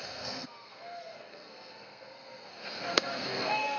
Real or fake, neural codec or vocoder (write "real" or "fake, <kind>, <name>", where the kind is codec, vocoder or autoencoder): fake, codec, SNAC